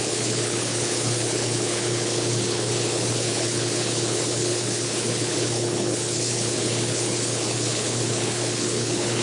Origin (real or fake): fake